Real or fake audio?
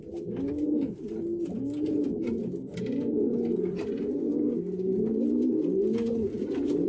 real